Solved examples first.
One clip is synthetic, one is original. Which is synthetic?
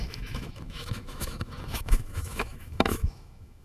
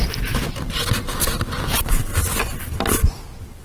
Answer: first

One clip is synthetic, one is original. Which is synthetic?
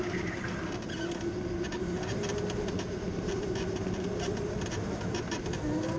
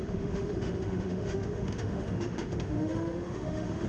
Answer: second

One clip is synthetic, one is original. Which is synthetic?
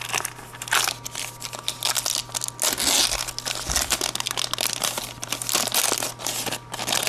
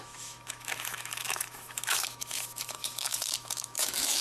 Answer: second